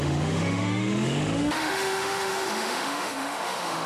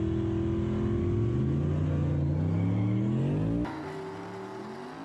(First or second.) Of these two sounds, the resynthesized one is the first